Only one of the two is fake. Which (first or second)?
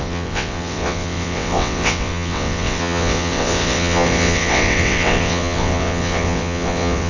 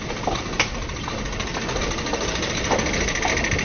first